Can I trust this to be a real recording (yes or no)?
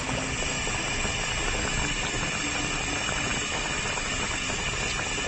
yes